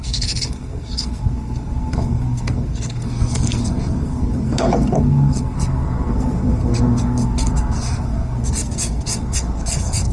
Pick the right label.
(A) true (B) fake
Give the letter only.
B